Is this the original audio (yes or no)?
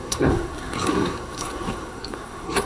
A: no